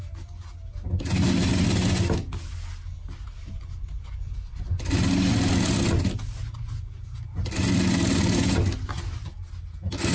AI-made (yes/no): no